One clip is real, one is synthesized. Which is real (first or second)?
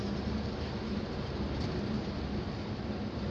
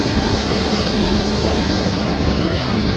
first